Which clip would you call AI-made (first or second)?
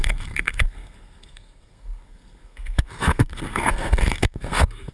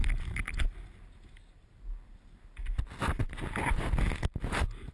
first